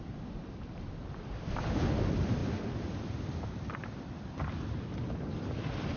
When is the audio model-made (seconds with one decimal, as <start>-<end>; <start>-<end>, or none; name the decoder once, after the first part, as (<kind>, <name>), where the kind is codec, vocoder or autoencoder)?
none